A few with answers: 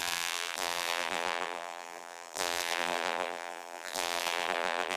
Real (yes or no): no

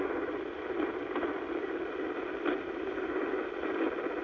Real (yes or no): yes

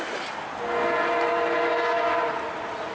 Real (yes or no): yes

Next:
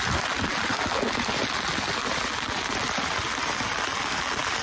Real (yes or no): yes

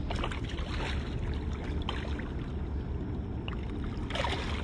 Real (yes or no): yes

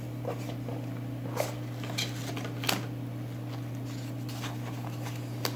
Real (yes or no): yes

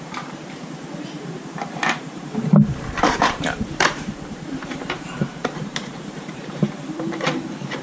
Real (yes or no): no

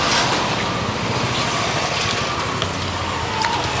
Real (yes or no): yes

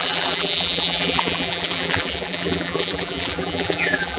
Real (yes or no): no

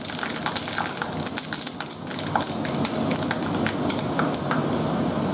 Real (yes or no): yes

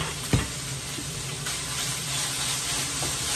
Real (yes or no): yes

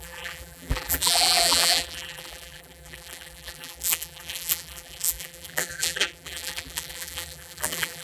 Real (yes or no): no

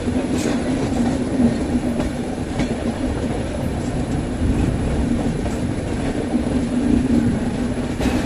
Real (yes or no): no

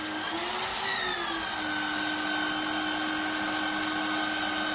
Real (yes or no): yes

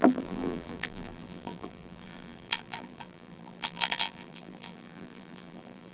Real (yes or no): no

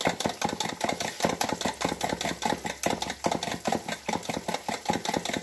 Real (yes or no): yes